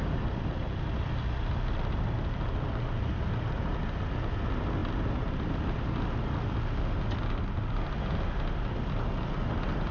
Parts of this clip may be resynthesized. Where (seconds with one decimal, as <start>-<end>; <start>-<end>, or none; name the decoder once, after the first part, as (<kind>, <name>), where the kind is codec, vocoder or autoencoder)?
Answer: none